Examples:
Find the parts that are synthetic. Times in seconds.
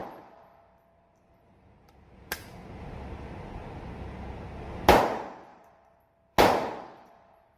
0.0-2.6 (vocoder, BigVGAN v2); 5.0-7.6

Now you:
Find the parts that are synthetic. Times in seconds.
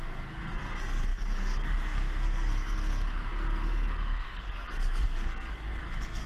0.0-6.3 (codec, SNAC)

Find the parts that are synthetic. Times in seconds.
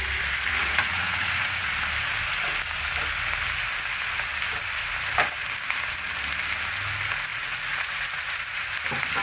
0.6-1.7 (vocoder, Vocos); 7.3-8.7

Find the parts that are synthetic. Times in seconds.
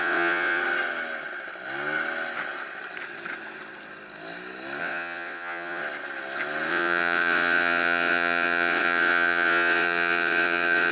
0.0-0.6 (vocoder, WaveNeXt); 4.8-5.8; 6.7-10.9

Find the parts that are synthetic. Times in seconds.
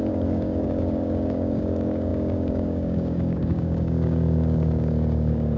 0.0-5.6 (codec, DAC)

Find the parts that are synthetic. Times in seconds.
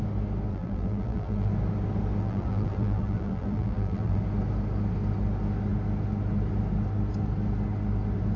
0.5-1.5 (vocoder, BigVGAN v2); 2.2-4.2